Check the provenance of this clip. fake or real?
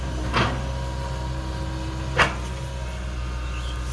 real